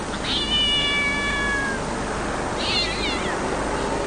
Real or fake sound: real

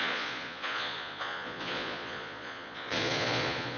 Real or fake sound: fake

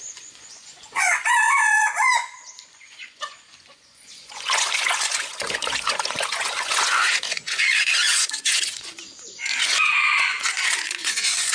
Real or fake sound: fake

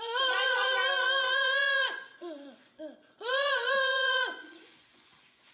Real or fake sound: fake